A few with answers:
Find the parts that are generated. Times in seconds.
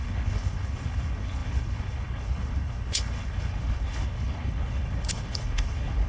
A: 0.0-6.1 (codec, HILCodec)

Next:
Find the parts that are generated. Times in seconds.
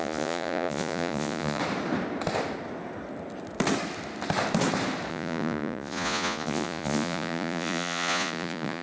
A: 0.0-1.6 (vocoder, Vocos); 5.1-8.8